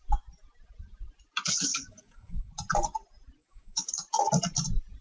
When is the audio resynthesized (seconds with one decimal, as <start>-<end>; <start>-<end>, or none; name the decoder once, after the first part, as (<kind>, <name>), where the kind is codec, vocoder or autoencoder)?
1.7-2.5 (codec, DAC); 3.4-3.9